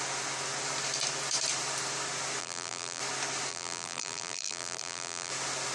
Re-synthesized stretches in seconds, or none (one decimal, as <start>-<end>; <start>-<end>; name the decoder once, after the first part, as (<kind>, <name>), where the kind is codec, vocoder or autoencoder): 2.4-3.0 (vocoder, BigVGAN v2); 3.5-5.3